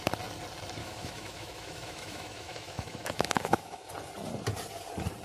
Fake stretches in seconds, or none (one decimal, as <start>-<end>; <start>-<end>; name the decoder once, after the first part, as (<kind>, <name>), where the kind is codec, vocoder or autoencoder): 0.8-3.9 (autoencoder, DAC-VAE)